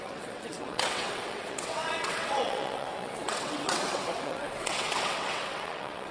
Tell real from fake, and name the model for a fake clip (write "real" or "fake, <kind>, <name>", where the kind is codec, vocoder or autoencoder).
fake, vocoder, WaveNeXt